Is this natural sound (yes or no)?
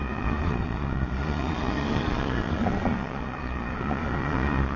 no